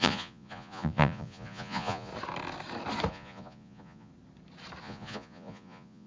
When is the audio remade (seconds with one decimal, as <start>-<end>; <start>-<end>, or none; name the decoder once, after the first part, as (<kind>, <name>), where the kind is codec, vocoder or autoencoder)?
0.0-2.1 (vocoder, Vocos); 3.1-4.1; 4.8-6.1